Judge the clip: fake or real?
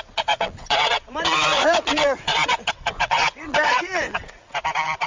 fake